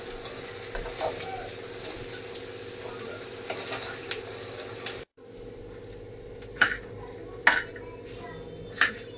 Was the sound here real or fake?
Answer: real